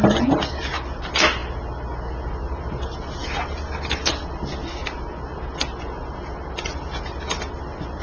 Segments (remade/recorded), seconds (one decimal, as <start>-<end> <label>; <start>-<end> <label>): 0.0-8.0 recorded